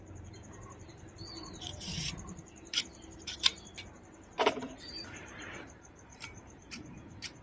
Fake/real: fake